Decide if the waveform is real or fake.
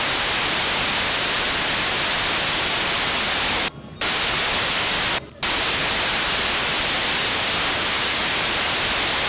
real